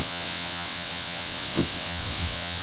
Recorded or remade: remade